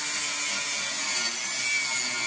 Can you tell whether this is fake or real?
real